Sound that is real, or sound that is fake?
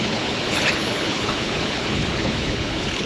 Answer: fake